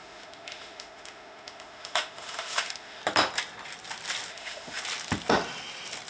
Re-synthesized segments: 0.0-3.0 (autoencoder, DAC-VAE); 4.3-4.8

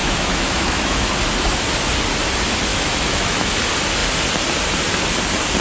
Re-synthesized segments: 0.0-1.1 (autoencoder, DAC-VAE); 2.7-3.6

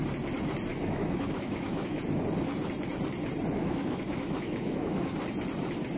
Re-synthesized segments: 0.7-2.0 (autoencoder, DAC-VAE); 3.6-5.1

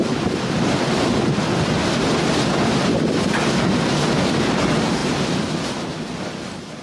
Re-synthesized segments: none

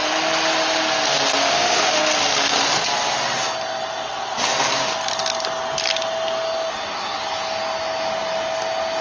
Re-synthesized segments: 1.5-2.0 (autoencoder, DAC-VAE)

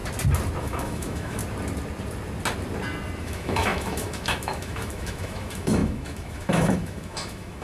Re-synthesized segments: 0.6-1.4 (autoencoder, DAC-VAE); 3.2-7.6

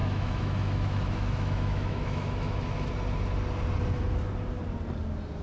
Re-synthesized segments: 0.0-2.9 (autoencoder, DAC-VAE)